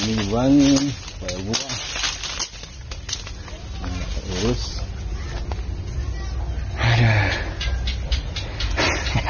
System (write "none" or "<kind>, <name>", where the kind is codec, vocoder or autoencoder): none